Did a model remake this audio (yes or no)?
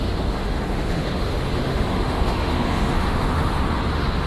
yes